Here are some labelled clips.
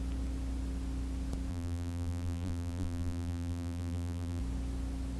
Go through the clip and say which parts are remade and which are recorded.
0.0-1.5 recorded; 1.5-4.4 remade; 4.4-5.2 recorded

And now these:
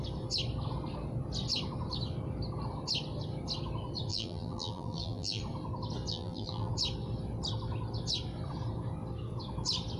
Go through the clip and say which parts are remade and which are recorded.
0.0-4.1 recorded; 4.1-5.4 remade; 5.4-6.1 recorded; 6.1-6.7 remade; 6.7-10.0 recorded

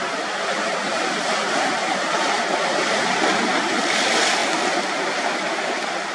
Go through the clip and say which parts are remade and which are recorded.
0.0-6.1 recorded

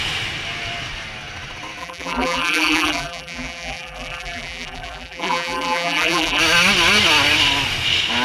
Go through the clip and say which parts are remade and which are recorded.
0.0-1.8 recorded; 1.8-6.4 remade; 6.4-8.2 recorded

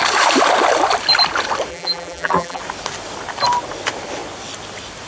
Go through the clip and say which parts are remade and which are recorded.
0.0-1.7 recorded; 1.7-2.6 remade; 2.6-5.1 recorded